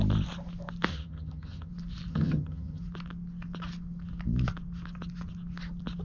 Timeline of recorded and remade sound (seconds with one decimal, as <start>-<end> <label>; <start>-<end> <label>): 0.0-0.9 recorded; 0.9-1.7 remade; 1.7-2.1 recorded; 2.1-2.8 remade; 2.8-6.0 recorded